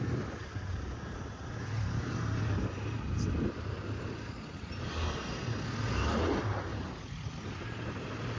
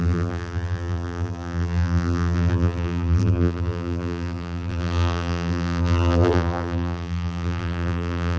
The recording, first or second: first